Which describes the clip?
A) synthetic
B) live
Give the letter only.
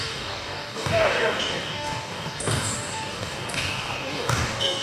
A